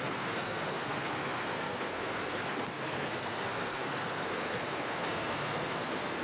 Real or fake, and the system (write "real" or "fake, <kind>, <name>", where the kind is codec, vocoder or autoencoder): fake, codec, SNAC